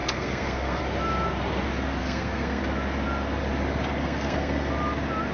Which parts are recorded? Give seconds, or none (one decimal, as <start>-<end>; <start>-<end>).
0.8-2.0; 2.6-4.0; 4.7-5.3